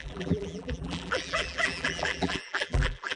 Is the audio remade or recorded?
remade